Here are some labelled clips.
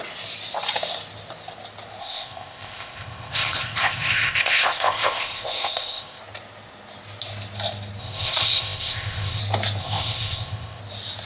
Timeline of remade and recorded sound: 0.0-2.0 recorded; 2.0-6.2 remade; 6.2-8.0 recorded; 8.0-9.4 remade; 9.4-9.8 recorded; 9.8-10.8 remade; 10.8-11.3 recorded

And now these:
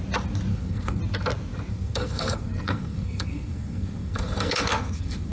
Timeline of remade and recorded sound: 0.0-0.5 recorded; 0.5-1.0 remade; 1.0-1.7 recorded; 1.7-5.3 remade

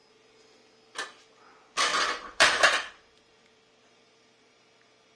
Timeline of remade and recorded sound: 0.0-1.9 recorded; 1.9-5.2 remade

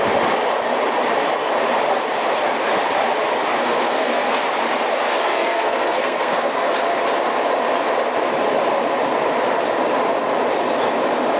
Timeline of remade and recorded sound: 0.0-3.6 recorded; 3.6-4.3 remade; 4.3-5.1 recorded; 5.1-6.7 remade; 6.7-11.4 recorded

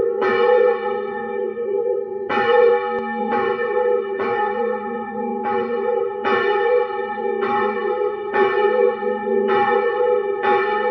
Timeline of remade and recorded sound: 0.0-2.7 remade; 2.7-3.2 recorded; 3.2-10.9 remade

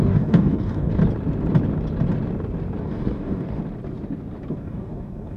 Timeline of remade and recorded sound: 0.0-1.0 remade; 1.0-2.8 recorded; 2.8-3.6 remade; 3.6-4.5 recorded; 4.5-5.4 remade